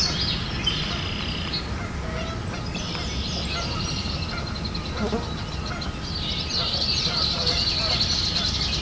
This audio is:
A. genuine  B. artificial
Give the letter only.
A